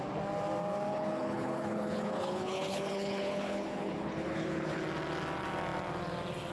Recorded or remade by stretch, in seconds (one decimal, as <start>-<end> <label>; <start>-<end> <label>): 0.0-0.9 recorded; 0.9-4.8 remade; 4.8-6.5 recorded